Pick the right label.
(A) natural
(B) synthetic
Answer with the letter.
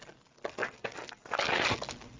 A